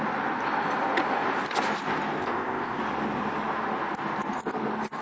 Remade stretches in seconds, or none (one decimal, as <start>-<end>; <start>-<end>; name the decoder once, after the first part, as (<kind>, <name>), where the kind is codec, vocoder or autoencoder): 2.2-2.8 (codec, ZipCodec)